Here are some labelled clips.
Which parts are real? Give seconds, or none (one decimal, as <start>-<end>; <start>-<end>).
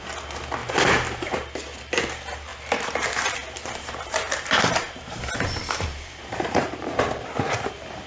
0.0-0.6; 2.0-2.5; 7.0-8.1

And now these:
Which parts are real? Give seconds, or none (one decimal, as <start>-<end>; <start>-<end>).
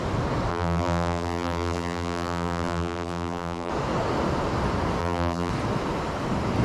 0.0-0.5; 3.7-5.0; 5.5-6.6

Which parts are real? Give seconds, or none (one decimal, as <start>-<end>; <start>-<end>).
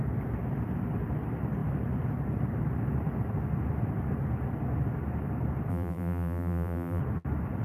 0.0-5.7; 7.0-7.6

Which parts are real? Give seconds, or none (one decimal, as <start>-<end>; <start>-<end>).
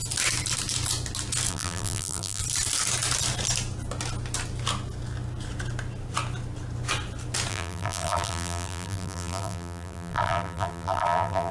0.0-1.5; 2.4-7.5